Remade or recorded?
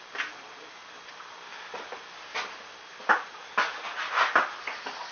recorded